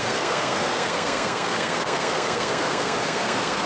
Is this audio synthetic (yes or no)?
yes